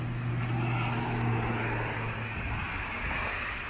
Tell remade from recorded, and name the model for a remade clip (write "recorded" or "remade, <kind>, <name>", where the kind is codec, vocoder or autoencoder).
recorded